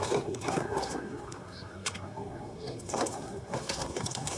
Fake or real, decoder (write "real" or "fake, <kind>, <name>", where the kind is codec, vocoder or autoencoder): fake, codec, SNAC